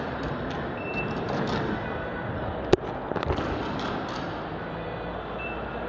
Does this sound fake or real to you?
real